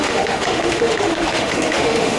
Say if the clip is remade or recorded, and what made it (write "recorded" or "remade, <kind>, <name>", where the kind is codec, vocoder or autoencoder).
remade, autoencoder, DAC-VAE